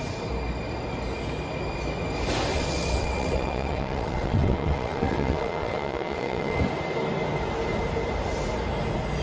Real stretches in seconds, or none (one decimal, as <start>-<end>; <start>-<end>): 0.0-2.5; 6.6-9.2